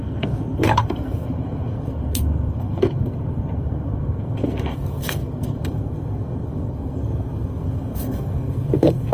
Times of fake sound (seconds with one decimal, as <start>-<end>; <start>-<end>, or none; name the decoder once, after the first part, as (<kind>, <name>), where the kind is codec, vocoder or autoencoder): 0.0-9.1 (codec, SNAC)